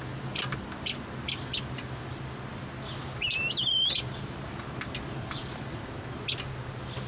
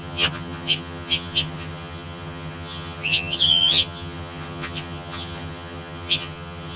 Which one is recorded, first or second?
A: first